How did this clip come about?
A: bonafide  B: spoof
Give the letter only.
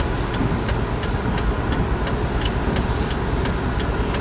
A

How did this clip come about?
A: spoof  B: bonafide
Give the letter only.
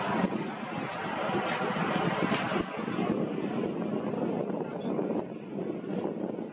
B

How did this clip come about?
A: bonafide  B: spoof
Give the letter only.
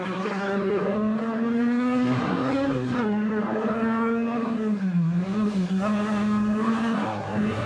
B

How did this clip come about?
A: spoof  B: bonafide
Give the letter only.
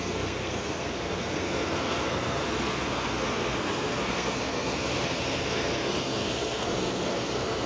A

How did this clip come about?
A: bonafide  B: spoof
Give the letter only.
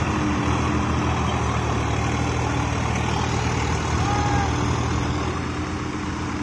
A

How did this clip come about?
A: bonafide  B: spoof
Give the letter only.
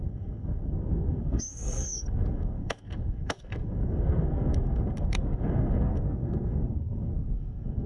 B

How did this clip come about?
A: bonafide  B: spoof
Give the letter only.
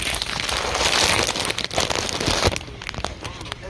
A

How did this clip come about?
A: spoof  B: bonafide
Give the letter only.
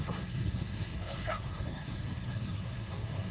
A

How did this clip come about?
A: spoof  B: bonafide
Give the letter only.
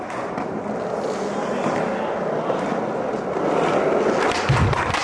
B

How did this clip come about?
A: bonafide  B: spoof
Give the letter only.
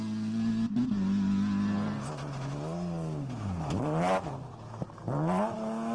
A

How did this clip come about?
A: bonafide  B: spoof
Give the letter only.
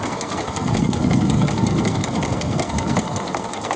B